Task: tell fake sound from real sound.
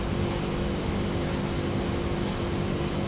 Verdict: real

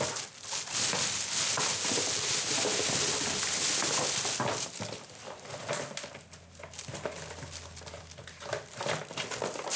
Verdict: real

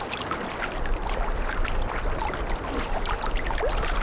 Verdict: real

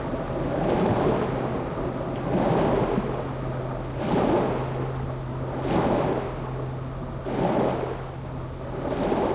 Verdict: real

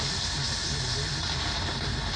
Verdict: real